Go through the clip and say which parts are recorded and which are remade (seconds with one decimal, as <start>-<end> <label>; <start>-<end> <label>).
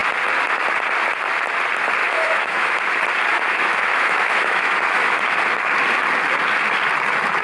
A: 0.0-2.0 recorded; 2.0-2.8 remade; 2.8-3.3 recorded; 3.3-5.2 remade; 5.2-7.4 recorded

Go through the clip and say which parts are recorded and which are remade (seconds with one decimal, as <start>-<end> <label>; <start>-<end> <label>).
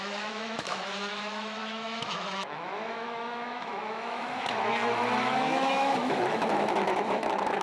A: 0.0-7.6 remade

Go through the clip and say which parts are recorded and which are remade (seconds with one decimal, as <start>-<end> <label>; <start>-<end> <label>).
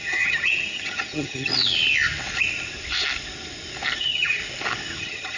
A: 0.0-1.5 remade; 1.5-4.0 recorded; 4.0-4.4 remade; 4.4-5.0 recorded; 5.0-5.4 remade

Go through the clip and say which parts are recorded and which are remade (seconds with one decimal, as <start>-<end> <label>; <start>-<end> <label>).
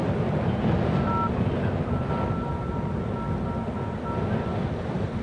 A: 0.0-5.2 recorded